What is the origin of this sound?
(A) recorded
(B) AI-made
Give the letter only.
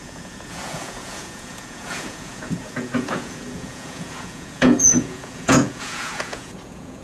B